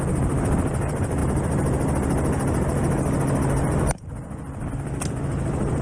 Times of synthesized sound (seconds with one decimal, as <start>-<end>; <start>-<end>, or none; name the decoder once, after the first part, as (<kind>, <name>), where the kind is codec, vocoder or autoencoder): 0.0-1.2 (vocoder, BigVGAN v2); 4.7-5.8